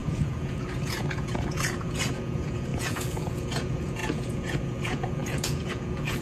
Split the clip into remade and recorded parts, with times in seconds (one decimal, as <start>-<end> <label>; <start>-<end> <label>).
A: 0.0-6.2 remade